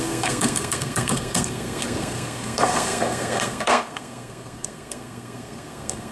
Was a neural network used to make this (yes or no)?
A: yes